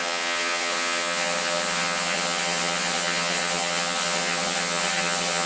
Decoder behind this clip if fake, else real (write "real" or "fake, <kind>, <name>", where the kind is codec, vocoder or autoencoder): fake, vocoder, HiFi-GAN